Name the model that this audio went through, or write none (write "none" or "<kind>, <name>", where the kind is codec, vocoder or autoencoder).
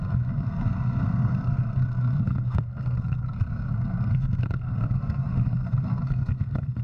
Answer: codec, SNAC